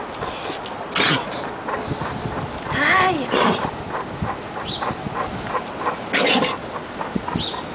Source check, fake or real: real